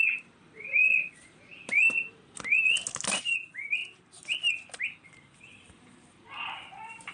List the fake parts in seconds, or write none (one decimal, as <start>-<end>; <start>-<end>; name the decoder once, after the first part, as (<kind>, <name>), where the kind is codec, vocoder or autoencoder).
0.0-1.5 (vocoder, BigVGAN v2); 3.3-3.8; 4.5-7.1